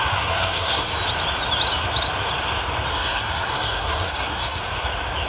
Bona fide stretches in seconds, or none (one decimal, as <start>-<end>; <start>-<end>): 0.9-2.9; 4.6-5.3